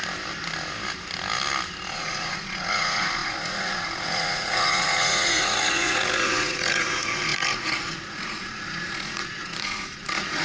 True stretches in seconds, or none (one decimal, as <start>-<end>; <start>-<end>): 0.0-1.9